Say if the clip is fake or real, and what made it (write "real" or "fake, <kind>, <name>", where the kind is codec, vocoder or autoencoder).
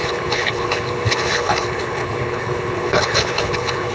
fake, codec, HILCodec